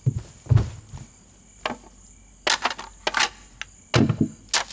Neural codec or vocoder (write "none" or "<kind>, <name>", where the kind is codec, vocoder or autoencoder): none